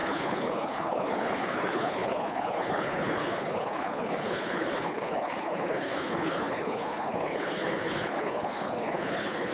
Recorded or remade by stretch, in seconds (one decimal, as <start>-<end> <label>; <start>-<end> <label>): 0.0-9.5 remade